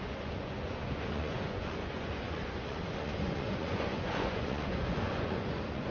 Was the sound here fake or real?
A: fake